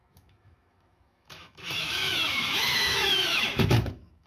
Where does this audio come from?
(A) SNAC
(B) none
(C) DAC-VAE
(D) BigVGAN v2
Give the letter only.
C